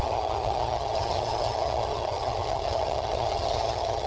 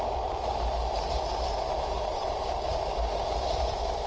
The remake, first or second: first